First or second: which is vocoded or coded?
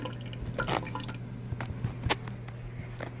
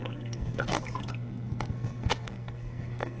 second